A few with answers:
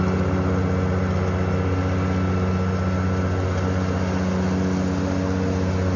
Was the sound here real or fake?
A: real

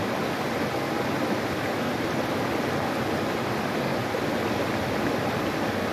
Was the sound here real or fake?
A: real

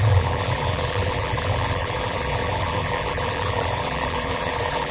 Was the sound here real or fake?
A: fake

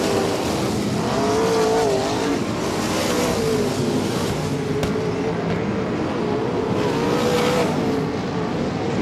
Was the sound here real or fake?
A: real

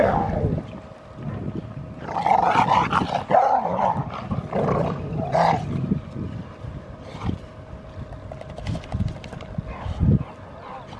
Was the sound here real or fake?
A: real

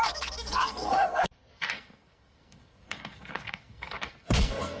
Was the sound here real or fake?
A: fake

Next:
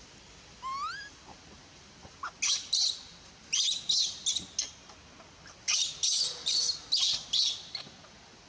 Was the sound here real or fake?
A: real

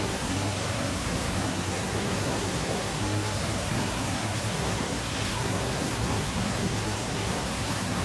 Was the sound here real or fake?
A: fake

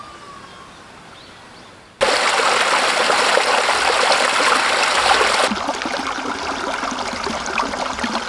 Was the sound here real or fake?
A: real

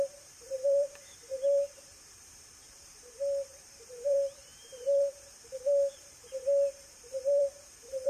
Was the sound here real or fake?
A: fake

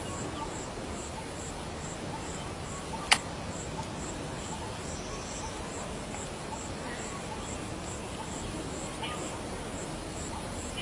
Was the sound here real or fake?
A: real